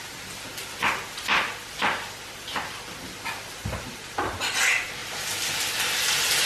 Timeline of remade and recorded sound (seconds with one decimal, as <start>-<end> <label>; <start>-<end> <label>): 0.0-3.6 recorded; 3.6-4.3 remade; 4.3-5.0 recorded; 5.0-6.1 remade; 6.1-6.5 recorded